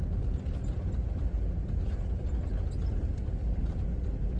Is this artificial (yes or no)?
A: no